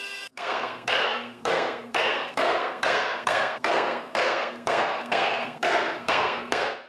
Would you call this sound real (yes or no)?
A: no